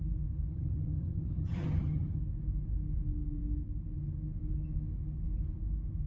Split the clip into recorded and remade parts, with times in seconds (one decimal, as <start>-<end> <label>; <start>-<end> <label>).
0.0-0.5 recorded; 0.5-2.2 remade; 2.2-6.1 recorded